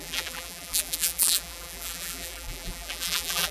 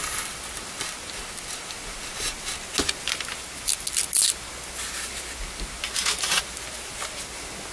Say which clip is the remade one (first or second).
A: first